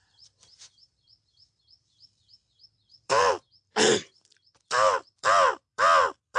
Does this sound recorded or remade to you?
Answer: remade